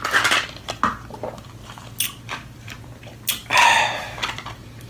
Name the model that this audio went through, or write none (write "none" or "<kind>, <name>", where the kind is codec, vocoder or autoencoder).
none